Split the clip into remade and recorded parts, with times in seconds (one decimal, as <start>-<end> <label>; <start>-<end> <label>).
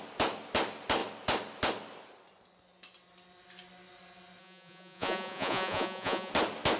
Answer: 0.0-4.4 recorded; 4.4-6.3 remade; 6.3-6.8 recorded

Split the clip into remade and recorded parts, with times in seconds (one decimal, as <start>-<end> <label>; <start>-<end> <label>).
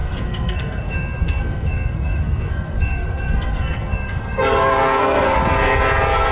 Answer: 0.0-5.4 remade; 5.4-6.3 recorded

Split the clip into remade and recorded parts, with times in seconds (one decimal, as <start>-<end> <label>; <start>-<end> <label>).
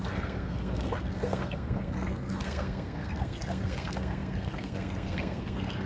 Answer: 0.0-5.9 remade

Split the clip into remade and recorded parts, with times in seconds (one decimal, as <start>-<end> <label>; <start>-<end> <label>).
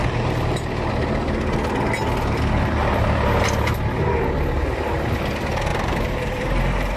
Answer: 0.0-0.9 remade; 0.9-2.8 recorded; 2.8-3.4 remade; 3.4-5.7 recorded; 5.7-7.0 remade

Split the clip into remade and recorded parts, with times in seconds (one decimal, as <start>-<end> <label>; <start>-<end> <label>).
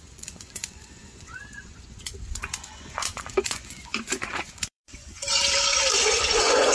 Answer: 0.0-5.2 remade; 5.2-6.0 recorded; 6.0-6.7 remade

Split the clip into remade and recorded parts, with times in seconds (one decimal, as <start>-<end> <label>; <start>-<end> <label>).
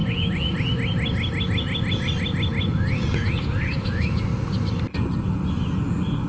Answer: 0.0-3.8 recorded; 3.8-4.3 remade; 4.3-6.3 recorded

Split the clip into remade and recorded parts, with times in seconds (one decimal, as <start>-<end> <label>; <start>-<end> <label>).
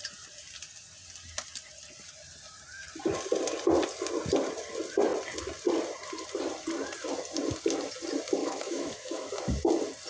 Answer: 0.0-8.4 recorded; 8.4-9.3 remade; 9.3-10.1 recorded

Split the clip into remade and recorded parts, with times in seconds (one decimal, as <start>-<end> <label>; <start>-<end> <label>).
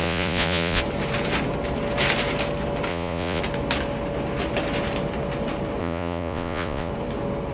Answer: 0.0-0.8 remade; 0.8-2.9 recorded; 2.9-3.4 remade; 3.4-5.8 recorded; 5.8-6.9 remade; 6.9-7.5 recorded